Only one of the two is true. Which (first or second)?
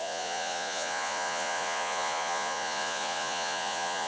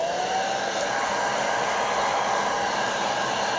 second